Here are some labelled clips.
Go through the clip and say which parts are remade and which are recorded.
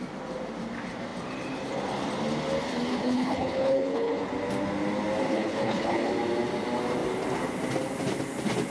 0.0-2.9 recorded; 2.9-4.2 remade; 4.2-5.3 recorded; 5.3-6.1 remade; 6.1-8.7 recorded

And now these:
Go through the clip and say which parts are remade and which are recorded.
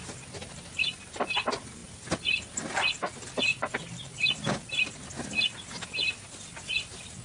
0.0-0.4 recorded; 0.4-1.4 remade; 1.4-3.5 recorded; 3.5-5.1 remade; 5.1-7.2 recorded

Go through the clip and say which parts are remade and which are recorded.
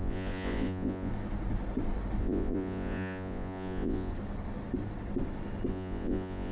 0.0-1.1 remade; 1.1-2.2 recorded; 2.2-4.1 remade; 4.1-5.7 recorded; 5.7-6.5 remade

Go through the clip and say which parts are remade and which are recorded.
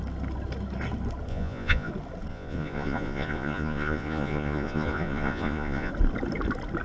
0.0-1.3 recorded; 1.3-1.9 remade; 1.9-2.3 recorded; 2.3-5.9 remade; 5.9-6.8 recorded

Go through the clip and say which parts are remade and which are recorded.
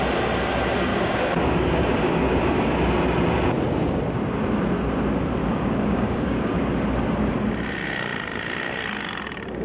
0.0-0.9 recorded; 0.9-2.7 remade; 2.7-5.4 recorded; 5.4-6.6 remade; 6.6-9.6 recorded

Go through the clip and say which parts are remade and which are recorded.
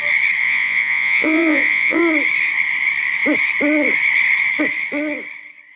0.0-0.4 recorded; 0.4-2.0 remade; 2.0-5.8 recorded